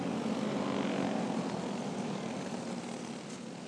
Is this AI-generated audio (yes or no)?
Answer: no